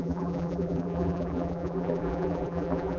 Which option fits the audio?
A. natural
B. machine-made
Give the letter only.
B